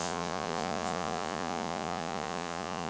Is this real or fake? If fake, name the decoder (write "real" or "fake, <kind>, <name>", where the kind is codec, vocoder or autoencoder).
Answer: fake, vocoder, Vocos